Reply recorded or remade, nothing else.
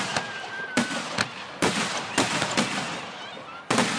remade